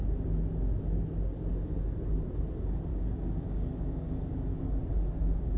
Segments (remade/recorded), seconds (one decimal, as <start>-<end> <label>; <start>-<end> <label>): 0.0-2.9 recorded; 2.9-4.8 remade; 4.8-5.6 recorded